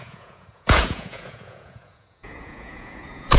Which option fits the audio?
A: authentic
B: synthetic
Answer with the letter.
B